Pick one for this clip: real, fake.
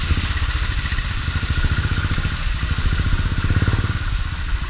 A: real